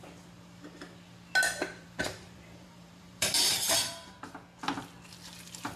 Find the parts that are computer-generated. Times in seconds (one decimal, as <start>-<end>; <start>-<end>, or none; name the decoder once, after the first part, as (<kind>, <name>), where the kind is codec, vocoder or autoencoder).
1.7-4.2 (vocoder, BigVGAN v2)